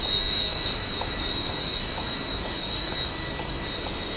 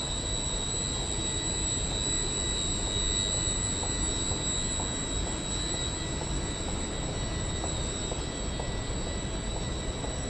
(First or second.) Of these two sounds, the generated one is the first